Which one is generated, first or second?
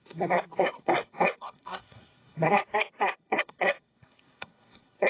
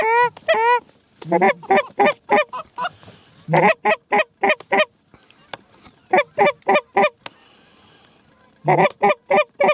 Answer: first